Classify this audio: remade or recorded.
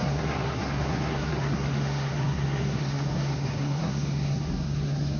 remade